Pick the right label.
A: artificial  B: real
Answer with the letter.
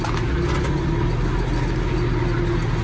B